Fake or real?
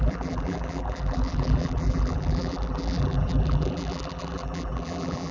fake